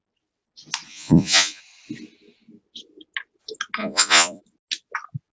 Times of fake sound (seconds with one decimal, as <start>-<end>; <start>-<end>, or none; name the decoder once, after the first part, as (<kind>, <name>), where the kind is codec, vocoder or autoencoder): 0.9-1.6 (vocoder, Vocos); 3.8-4.4